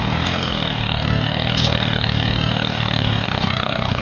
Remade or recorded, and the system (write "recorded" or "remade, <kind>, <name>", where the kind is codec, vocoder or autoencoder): remade, codec, DAC